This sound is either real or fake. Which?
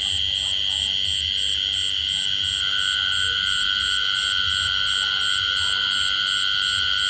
real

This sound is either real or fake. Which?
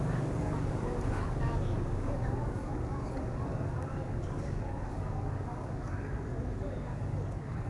fake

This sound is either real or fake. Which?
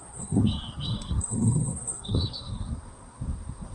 fake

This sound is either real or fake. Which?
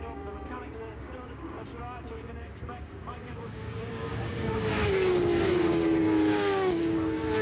fake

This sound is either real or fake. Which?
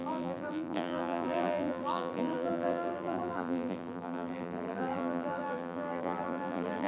fake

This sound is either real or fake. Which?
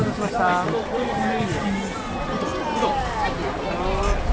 real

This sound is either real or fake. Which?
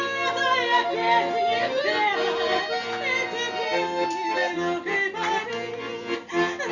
real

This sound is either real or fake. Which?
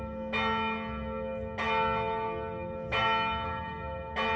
real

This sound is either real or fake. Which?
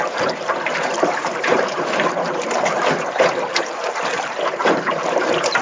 fake